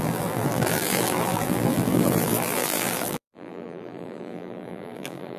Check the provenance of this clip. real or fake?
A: fake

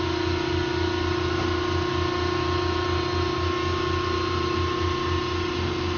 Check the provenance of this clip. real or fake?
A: real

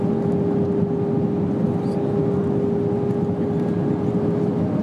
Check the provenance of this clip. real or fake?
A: real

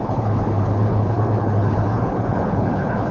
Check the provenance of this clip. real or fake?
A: fake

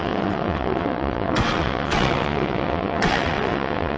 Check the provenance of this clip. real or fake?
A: fake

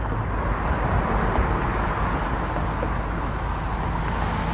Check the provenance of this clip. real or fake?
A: real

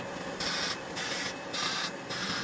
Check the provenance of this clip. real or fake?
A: real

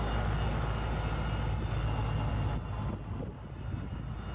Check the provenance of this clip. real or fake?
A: real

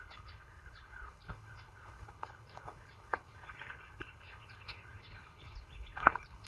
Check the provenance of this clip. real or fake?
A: fake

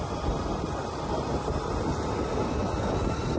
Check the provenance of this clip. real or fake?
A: real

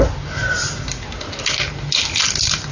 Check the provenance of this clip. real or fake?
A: real